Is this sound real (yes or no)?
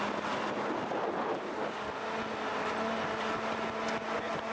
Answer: yes